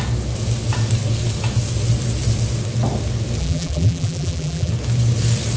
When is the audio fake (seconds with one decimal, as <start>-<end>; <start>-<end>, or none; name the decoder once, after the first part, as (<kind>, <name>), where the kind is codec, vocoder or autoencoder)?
3.4-4.7 (vocoder, BigVGAN v2)